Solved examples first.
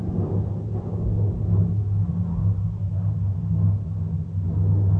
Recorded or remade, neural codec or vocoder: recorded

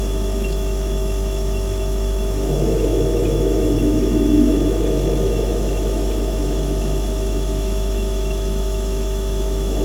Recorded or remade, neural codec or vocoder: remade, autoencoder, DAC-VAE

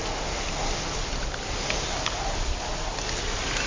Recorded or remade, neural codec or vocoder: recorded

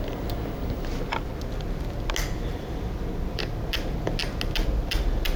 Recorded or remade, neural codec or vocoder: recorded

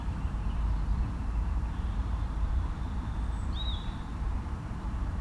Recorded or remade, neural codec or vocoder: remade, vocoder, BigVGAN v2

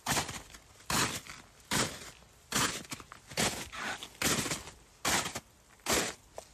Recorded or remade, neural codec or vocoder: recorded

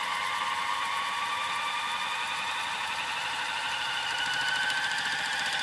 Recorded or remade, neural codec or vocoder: remade, vocoder, BigVGAN v2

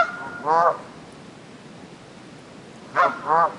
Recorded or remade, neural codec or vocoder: recorded